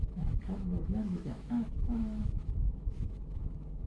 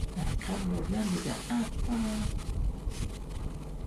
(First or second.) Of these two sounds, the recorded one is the second